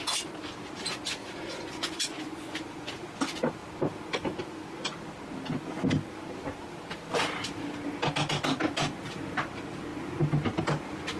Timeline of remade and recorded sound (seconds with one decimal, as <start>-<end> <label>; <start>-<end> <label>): 0.0-1.2 recorded; 1.2-2.9 remade; 2.9-11.2 recorded